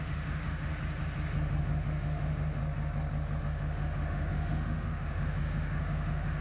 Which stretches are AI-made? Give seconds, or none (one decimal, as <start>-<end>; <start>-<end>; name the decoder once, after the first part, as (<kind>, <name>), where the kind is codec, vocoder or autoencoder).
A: 0.0-0.7 (autoencoder, DAC-VAE); 1.6-2.6; 3.4-6.4

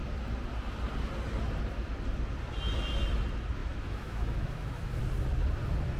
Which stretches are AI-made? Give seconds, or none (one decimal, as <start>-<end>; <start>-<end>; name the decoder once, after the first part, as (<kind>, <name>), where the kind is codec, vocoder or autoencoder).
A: 3.6-5.0 (autoencoder, DAC-VAE)

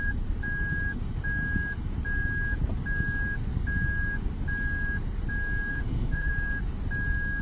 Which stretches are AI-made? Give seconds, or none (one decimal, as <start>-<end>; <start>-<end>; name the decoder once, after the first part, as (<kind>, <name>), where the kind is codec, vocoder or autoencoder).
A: 5.7-6.3 (autoencoder, DAC-VAE)

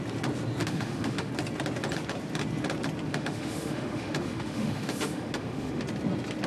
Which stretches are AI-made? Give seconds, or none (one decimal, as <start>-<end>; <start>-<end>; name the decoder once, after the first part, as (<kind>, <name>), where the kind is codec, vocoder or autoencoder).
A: 0.6-1.3 (autoencoder, DAC-VAE); 3.1-5.8

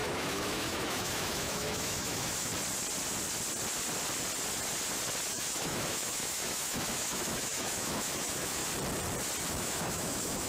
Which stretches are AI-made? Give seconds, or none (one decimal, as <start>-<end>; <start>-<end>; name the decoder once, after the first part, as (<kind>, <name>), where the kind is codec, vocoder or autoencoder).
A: 0.0-2.5 (autoencoder, DAC-VAE); 5.3-8.6; 9.5-10.5

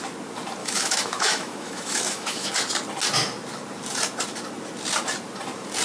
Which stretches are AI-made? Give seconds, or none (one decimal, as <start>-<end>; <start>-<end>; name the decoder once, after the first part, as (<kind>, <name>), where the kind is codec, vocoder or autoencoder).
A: 0.6-2.5 (autoencoder, DAC-VAE)

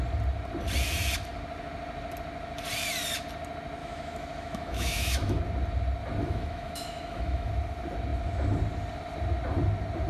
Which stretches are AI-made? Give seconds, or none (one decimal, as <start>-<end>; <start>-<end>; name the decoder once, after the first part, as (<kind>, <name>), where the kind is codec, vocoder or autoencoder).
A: 3.8-5.4 (autoencoder, DAC-VAE); 6.2-7.5

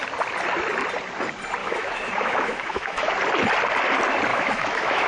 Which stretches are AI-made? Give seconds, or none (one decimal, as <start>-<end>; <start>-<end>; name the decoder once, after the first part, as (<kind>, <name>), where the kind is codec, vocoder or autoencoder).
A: 1.6-3.1 (autoencoder, DAC-VAE); 4.3-5.1